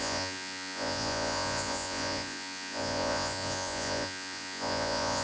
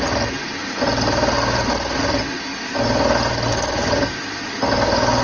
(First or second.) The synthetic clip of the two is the first